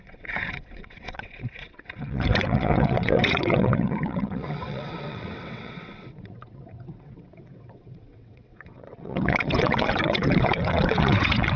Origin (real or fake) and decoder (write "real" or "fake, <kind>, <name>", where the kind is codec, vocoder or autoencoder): fake, vocoder, WaveNeXt